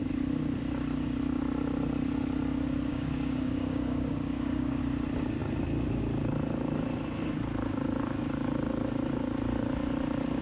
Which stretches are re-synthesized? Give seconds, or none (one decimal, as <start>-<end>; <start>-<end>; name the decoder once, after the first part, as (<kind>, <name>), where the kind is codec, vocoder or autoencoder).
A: 2.9-4.8 (codec, DAC)